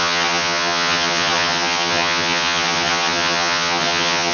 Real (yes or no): no